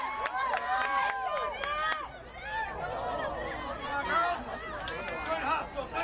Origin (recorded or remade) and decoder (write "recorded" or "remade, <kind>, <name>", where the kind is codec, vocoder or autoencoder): recorded